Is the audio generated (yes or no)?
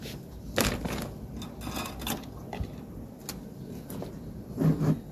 no